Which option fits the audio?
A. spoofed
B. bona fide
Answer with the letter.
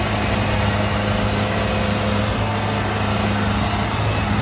B